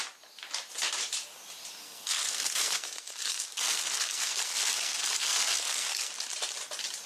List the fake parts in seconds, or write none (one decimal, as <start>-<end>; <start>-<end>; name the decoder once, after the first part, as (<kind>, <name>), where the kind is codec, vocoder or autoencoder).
1.8-6.1 (codec, SNAC)